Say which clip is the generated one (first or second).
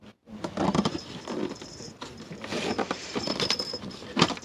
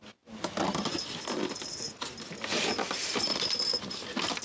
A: first